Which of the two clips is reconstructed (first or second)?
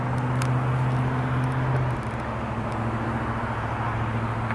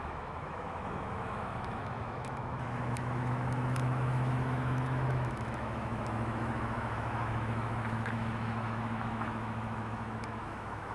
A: second